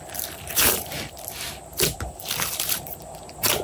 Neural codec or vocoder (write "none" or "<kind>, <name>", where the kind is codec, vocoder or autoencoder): vocoder, BigVGAN v2